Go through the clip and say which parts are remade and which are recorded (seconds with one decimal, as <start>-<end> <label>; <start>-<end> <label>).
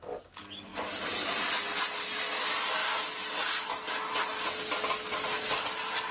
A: 0.0-6.1 recorded